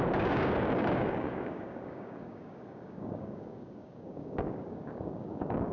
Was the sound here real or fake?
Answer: fake